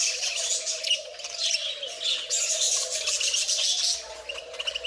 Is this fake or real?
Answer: real